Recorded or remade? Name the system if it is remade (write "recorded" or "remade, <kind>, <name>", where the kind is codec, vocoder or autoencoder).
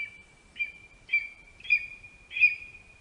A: recorded